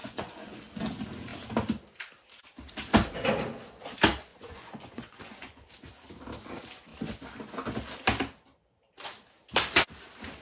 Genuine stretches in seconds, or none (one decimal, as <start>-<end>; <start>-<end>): 0.6-4.3; 5.7-10.4